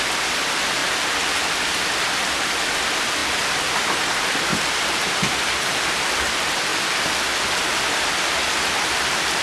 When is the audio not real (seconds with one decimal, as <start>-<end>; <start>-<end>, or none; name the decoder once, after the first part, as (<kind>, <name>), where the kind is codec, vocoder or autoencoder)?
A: 0.8-2.5 (vocoder, BigVGAN v2); 3.2-3.8; 4.5-6.1; 6.7-8.4

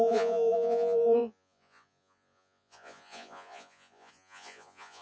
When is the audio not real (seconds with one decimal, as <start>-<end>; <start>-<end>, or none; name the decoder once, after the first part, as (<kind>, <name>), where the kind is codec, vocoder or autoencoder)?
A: 0.0-5.0 (vocoder, Vocos)

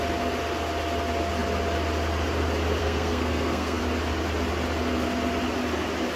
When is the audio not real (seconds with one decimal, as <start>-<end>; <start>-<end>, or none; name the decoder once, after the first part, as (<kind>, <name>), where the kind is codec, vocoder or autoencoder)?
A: 2.8-3.8 (codec, SNAC)

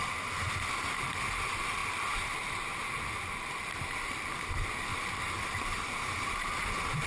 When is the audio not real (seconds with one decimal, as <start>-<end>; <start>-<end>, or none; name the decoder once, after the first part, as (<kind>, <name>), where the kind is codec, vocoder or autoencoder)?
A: 4.9-5.9 (vocoder, BigVGAN v2)

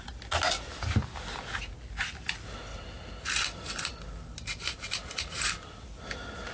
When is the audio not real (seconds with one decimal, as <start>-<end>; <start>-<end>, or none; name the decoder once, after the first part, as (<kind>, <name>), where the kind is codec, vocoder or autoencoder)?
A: none

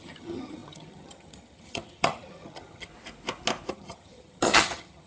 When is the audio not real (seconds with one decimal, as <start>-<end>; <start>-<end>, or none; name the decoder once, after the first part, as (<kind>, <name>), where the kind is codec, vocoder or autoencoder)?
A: 0.0-2.9 (vocoder, HiFi-GAN); 3.7-5.1